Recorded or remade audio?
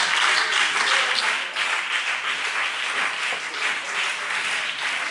recorded